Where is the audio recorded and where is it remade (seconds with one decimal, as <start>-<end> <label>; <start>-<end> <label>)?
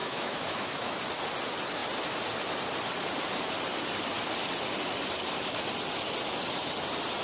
0.0-1.0 remade; 1.0-7.2 recorded